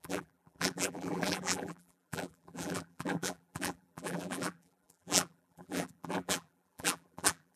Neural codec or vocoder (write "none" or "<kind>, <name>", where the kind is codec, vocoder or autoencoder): vocoder, BigVGAN v2